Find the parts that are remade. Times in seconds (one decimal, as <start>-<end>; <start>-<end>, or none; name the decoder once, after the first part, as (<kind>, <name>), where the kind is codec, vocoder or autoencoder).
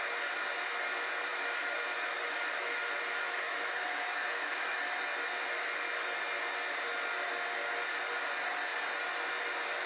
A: 1.3-4.8 (autoencoder, DAC-VAE)